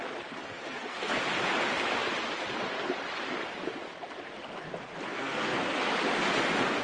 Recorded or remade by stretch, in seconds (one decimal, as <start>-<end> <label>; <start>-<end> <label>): 0.0-0.4 recorded; 0.4-1.2 remade; 1.2-5.1 recorded; 5.1-5.8 remade; 5.8-6.8 recorded